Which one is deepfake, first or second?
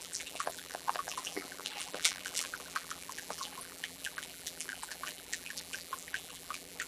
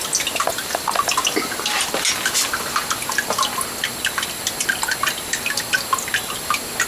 first